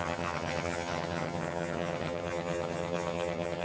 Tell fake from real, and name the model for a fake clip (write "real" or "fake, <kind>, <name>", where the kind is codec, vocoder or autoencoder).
fake, vocoder, HiFi-GAN